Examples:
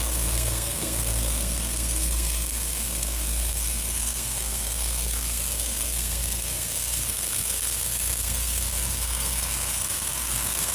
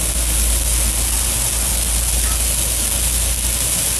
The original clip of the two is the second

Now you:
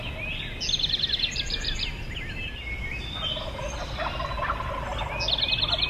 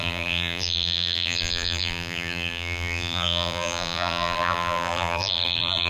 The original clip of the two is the first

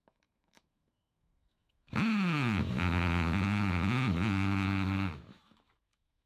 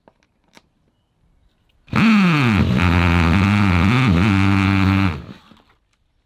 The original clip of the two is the second